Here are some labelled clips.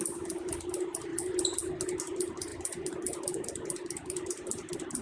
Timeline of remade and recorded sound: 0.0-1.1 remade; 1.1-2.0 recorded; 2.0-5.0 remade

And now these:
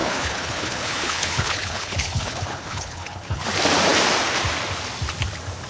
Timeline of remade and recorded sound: 0.0-3.4 remade; 3.4-5.7 recorded